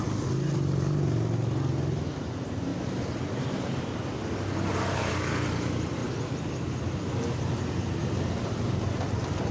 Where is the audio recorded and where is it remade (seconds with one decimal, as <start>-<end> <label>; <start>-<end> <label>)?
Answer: 0.0-9.5 recorded